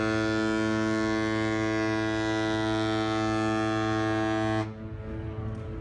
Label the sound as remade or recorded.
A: recorded